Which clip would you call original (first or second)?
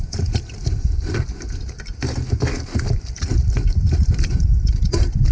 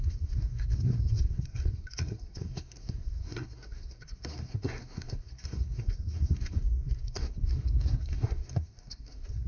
first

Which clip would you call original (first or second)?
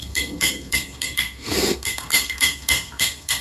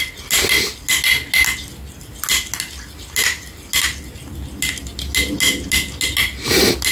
second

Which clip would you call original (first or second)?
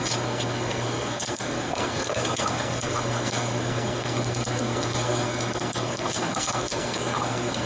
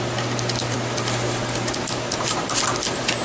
second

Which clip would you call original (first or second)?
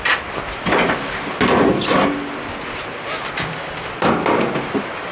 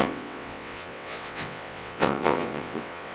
first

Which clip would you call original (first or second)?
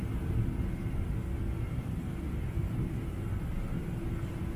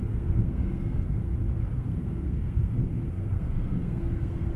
first